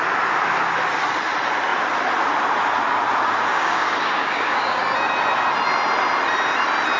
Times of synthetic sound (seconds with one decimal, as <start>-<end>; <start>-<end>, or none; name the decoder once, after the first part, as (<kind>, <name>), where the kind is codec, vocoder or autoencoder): 3.5-4.8 (codec, DAC)